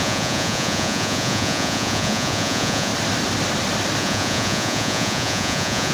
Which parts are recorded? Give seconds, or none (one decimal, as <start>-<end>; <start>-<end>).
2.9-4.0